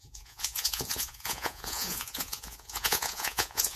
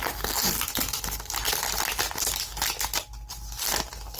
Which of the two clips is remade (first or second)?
first